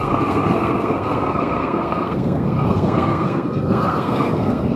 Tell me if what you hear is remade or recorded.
remade